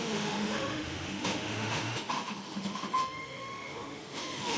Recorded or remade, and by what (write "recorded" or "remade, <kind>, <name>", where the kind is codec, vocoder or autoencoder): remade, autoencoder, DAC-VAE